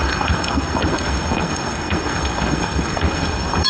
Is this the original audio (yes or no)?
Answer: no